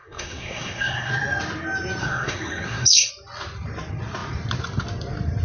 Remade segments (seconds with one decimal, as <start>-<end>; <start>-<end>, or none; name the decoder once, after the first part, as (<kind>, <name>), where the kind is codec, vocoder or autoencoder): 0.0-1.1 (codec, SNAC); 2.0-3.1